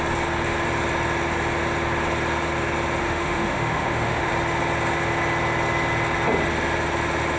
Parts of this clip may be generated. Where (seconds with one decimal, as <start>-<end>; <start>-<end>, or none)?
3.0-4.3